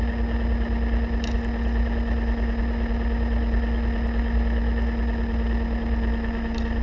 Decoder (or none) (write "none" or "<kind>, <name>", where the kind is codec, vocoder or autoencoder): none